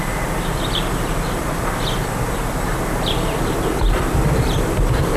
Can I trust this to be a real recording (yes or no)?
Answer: no